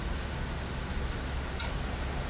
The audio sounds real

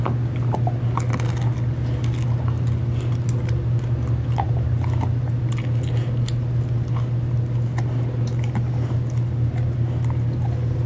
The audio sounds real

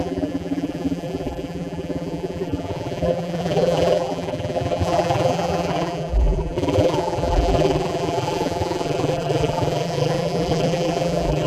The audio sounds fake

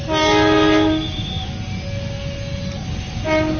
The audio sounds real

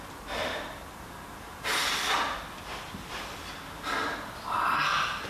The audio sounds real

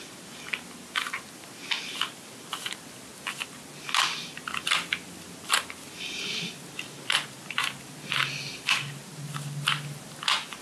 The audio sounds real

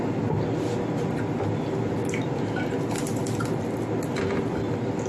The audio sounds fake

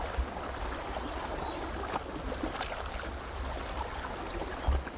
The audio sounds real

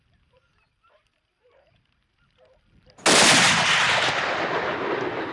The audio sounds real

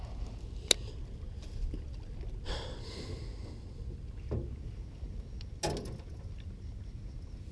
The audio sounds real